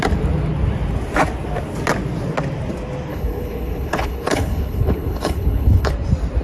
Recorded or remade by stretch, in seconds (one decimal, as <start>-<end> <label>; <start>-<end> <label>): 0.0-3.1 recorded; 3.1-5.9 remade; 5.9-6.4 recorded